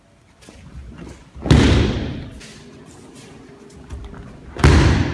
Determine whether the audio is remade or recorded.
recorded